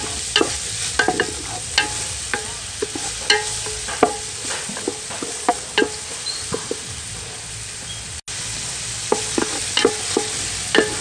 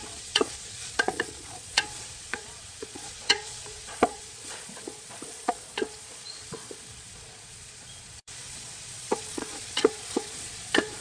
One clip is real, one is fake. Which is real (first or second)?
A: first